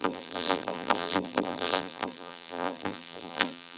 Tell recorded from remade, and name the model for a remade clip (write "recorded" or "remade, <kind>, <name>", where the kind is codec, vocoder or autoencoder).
remade, vocoder, BigVGAN v2